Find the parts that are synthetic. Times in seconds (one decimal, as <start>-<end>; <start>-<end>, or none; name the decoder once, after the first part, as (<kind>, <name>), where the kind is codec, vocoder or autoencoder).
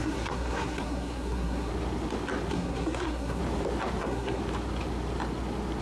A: 0.0-1.7 (codec, SNAC); 2.5-3.4; 4.0-4.4